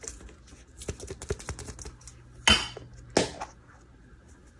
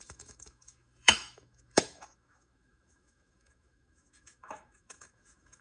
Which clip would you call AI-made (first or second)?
second